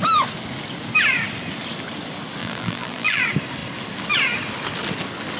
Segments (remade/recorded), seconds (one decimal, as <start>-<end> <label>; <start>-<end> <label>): 0.0-2.4 recorded; 2.4-3.2 remade; 3.2-5.4 recorded